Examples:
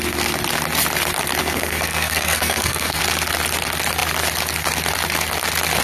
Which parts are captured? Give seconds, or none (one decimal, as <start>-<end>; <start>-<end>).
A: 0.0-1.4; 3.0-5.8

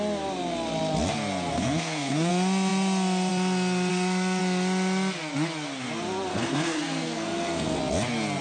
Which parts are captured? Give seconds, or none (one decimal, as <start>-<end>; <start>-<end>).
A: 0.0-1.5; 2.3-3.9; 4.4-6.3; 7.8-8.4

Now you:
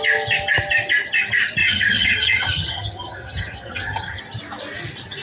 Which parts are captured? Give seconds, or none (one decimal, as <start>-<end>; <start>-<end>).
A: 0.0-1.6; 4.2-5.2